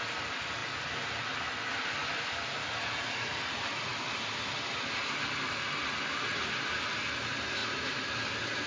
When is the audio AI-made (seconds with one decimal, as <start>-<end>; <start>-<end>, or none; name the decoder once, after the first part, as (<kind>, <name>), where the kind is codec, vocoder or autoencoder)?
none